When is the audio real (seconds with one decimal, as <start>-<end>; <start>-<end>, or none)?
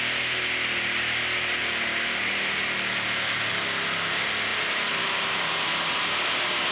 0.0-6.7